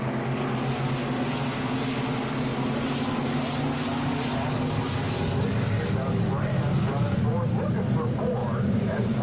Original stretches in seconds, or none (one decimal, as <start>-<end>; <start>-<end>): 0.0-2.5; 3.4-8.4